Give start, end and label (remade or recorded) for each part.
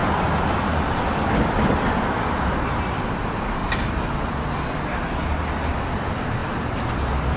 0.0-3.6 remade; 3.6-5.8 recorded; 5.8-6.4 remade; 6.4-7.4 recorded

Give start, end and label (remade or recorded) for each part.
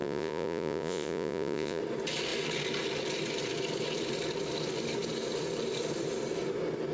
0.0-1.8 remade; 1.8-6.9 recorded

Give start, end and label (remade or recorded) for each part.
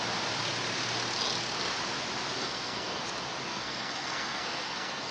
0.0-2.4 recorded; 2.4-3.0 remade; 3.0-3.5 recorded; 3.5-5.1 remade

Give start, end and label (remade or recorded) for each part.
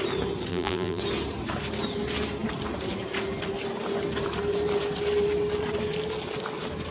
0.0-0.5 recorded; 0.5-1.0 remade; 1.0-6.9 recorded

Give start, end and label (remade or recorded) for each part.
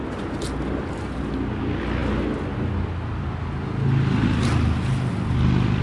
0.0-5.8 recorded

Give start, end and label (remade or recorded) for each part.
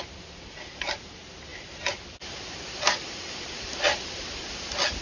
0.0-1.5 recorded; 1.5-4.0 remade; 4.0-5.0 recorded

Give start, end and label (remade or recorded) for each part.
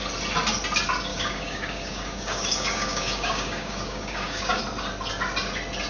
0.0-1.1 recorded; 1.1-4.6 remade; 4.6-5.9 recorded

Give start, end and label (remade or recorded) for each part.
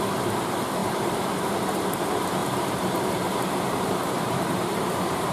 0.0-0.8 recorded; 0.8-1.5 remade; 1.5-2.4 recorded; 2.4-5.3 remade